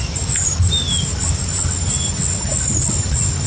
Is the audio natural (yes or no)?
yes